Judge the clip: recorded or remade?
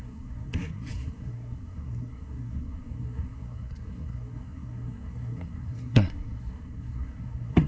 remade